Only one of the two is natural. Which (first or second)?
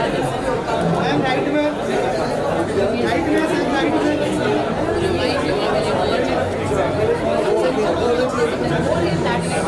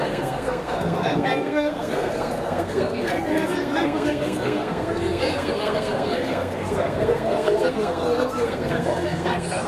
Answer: first